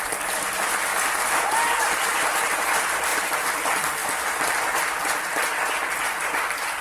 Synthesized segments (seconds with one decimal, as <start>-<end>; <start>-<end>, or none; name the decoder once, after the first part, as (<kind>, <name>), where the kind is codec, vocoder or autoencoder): none